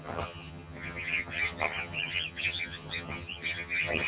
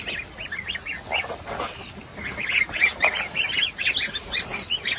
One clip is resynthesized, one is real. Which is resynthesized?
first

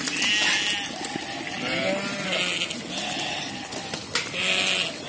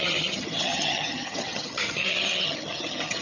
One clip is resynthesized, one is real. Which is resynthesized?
second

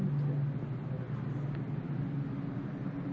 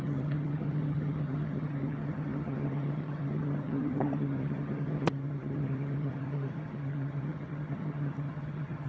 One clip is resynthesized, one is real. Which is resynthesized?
second